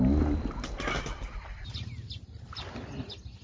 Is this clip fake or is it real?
real